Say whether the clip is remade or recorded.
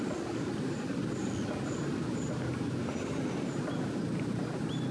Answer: recorded